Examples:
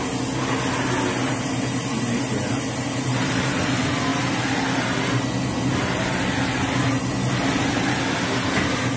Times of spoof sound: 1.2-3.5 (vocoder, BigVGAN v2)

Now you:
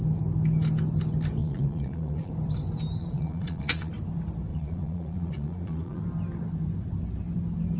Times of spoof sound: 1.4-2.3 (vocoder, Vocos); 3.0-3.9; 4.5-6.0

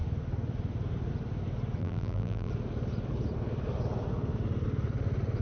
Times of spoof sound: 1.8-2.5 (vocoder, BigVGAN v2)

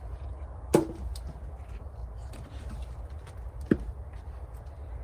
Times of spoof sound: none

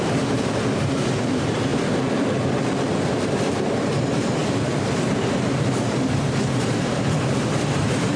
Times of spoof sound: 0.0-1.7 (vocoder, BigVGAN v2); 3.2-8.2

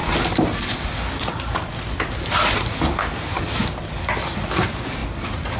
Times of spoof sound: none